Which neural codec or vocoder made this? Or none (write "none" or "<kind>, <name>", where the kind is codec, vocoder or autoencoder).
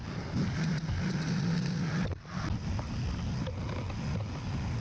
none